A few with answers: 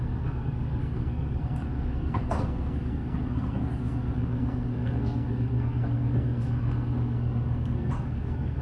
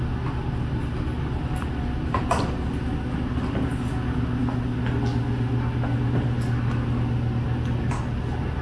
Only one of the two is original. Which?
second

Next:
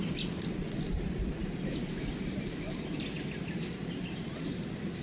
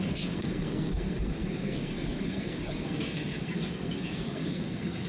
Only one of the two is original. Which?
first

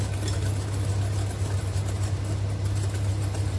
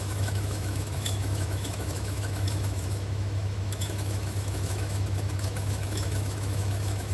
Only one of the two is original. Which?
first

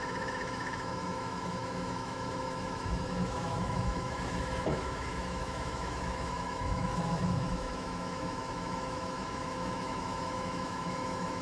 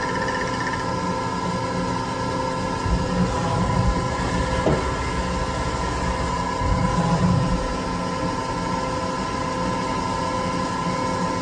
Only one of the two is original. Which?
second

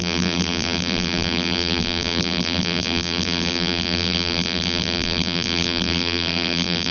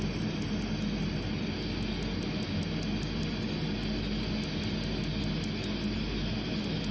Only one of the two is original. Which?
second